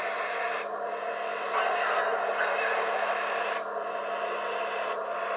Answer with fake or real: real